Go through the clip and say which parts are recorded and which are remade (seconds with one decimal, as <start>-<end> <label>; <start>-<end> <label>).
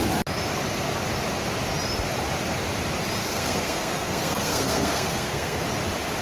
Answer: 0.0-3.2 recorded; 3.2-5.6 remade; 5.6-6.2 recorded